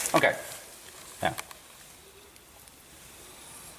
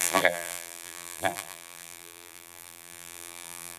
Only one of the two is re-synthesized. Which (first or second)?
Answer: second